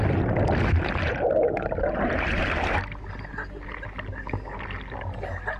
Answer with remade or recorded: recorded